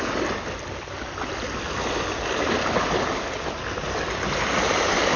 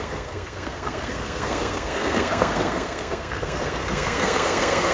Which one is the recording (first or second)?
first